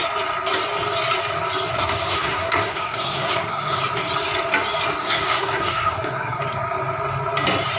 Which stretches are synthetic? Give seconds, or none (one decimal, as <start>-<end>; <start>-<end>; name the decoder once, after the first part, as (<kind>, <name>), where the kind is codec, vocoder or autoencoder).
1.7-3.8 (codec, SNAC); 5.0-6.4